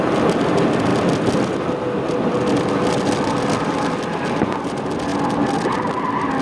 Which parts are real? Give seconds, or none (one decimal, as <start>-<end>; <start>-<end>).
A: 0.0-6.4